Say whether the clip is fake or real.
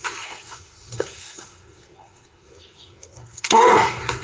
fake